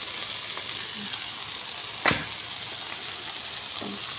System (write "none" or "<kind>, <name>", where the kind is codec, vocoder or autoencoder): none